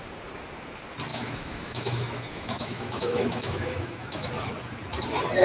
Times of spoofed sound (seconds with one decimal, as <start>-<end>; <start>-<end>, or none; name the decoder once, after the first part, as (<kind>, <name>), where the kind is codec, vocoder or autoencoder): 1.1-4.3 (autoencoder, DAC-VAE)